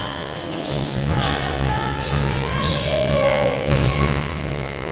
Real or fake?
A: fake